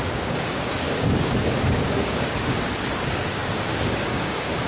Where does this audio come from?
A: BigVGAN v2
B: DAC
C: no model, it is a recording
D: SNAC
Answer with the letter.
B